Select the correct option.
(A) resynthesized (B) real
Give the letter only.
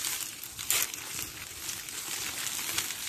A